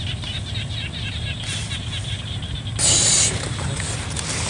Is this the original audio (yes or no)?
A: yes